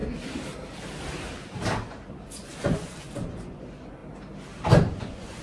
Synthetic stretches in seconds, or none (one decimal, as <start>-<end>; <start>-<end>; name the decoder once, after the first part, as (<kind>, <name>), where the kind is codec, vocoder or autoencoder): 2.3-4.0 (vocoder, Vocos); 5.0-5.4